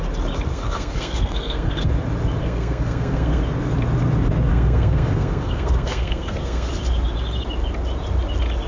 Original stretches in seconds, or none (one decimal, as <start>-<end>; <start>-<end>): 0.0-0.5; 1.9-2.4; 3.4-4.5; 6.7-8.7